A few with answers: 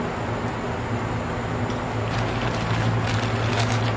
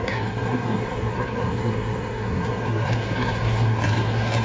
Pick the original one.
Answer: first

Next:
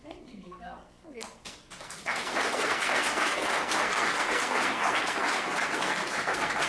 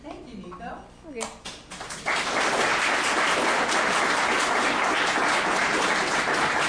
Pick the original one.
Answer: second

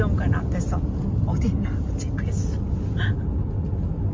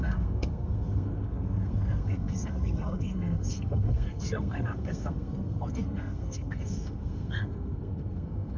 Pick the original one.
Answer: first